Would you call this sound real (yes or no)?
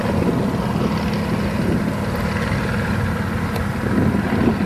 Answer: yes